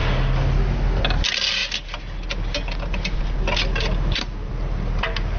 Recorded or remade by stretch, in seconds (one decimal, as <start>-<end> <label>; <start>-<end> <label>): 0.0-5.4 recorded